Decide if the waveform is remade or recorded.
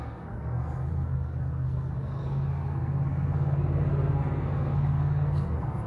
remade